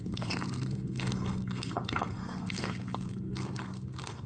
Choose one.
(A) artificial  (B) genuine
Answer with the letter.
A